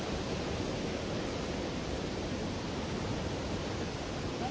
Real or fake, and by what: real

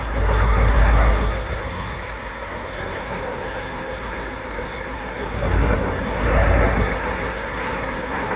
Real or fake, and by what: fake, codec, SNAC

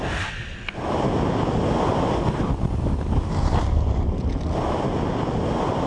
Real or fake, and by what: real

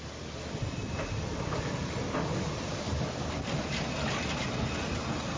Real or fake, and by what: real